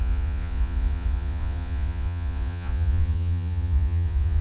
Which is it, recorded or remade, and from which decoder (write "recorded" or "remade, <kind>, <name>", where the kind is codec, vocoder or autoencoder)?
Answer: remade, vocoder, Vocos